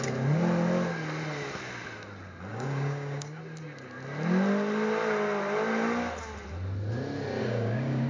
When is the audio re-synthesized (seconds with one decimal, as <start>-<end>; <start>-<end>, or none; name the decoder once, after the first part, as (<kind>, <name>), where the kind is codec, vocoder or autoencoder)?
2.5-3.4 (codec, DAC); 7.4-8.1